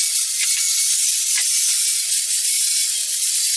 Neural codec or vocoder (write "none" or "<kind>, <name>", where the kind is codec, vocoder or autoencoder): none